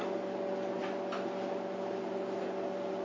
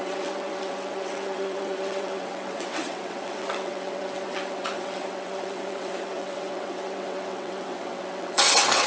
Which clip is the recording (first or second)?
first